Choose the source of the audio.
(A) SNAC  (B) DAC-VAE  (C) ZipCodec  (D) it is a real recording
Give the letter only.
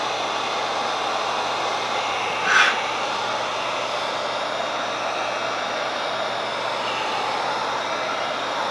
D